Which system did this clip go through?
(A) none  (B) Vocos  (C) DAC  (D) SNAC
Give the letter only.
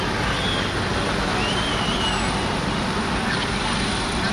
A